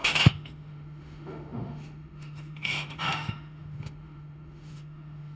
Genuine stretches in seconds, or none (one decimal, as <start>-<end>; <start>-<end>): none